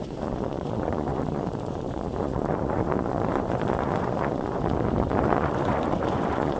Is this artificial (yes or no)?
yes